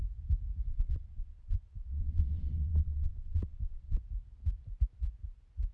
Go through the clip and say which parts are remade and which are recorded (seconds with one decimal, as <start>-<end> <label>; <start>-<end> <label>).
0.0-0.7 recorded; 0.7-4.0 remade; 4.0-5.7 recorded